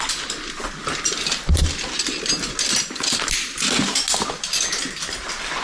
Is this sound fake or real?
real